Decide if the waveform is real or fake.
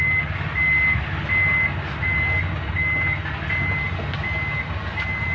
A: real